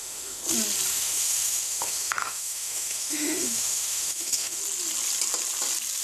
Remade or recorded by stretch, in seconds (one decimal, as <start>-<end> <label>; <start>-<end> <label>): 0.0-0.4 remade; 0.4-0.9 recorded; 0.9-4.6 remade; 4.6-6.0 recorded

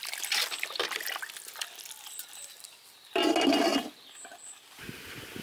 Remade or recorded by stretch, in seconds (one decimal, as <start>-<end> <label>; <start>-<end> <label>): 0.0-5.4 recorded

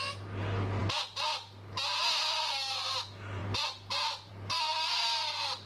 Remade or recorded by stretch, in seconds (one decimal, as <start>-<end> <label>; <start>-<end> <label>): 0.0-5.7 recorded

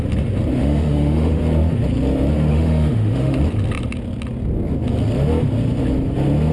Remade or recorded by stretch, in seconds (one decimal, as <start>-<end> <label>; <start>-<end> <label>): 0.0-0.6 recorded; 0.6-1.4 remade; 1.4-2.5 recorded; 2.5-3.4 remade; 3.4-6.5 recorded